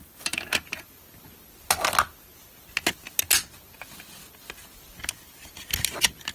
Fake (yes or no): no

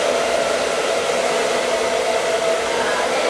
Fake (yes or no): no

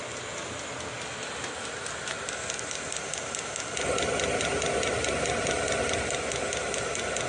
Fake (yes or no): no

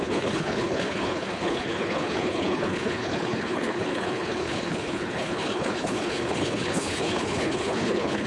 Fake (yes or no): yes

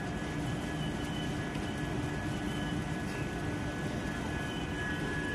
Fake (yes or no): no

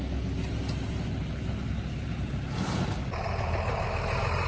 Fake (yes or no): no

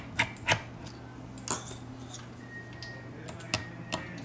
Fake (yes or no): no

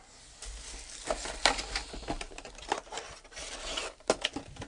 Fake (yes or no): no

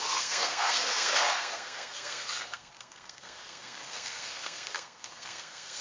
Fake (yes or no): yes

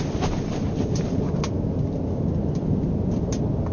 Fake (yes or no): no